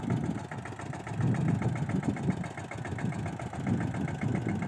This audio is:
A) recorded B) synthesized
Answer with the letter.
A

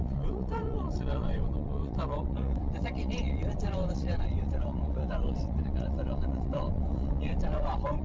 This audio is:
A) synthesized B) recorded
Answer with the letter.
A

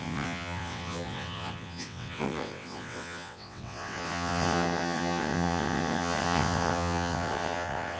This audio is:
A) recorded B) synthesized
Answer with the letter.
B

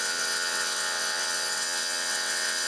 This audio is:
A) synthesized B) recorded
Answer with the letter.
A